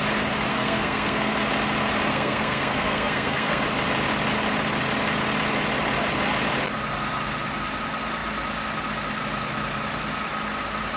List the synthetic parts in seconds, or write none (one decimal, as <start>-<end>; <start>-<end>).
0.5-1.3; 2.1-3.6